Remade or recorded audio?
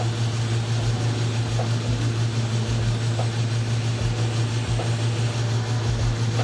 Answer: recorded